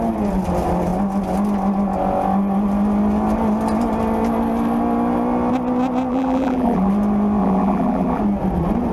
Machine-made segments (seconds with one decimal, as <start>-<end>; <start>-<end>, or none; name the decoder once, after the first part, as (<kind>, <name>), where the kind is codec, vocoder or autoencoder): 6.1-6.9 (vocoder, BigVGAN v2); 7.4-8.2